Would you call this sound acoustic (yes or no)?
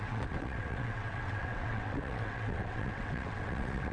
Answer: no